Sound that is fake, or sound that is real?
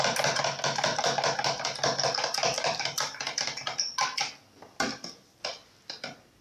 real